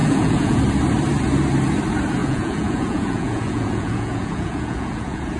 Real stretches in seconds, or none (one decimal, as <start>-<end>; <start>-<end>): 0.6-2.2